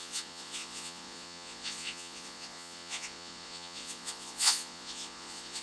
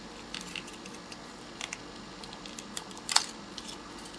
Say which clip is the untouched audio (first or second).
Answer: second